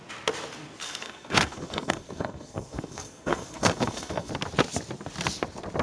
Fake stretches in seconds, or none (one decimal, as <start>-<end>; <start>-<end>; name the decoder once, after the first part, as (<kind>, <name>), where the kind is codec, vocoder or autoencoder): 0.8-4.3 (codec, SNAC)